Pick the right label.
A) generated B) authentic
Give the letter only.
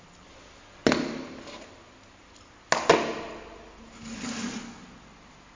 B